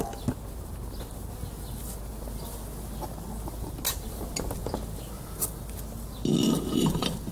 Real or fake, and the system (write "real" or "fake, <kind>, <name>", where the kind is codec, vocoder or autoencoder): real